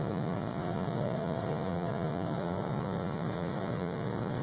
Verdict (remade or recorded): remade